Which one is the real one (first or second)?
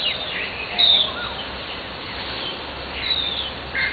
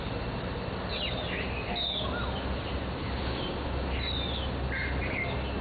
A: second